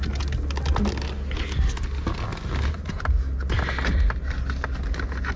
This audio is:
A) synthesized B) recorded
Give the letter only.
B